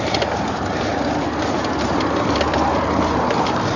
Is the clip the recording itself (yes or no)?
no